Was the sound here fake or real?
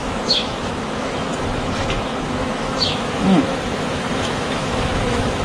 fake